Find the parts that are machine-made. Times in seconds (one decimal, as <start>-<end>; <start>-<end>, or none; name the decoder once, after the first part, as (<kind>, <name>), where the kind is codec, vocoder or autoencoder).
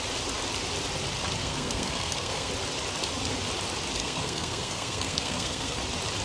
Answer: 1.4-2.5 (codec, SNAC); 4.0-5.8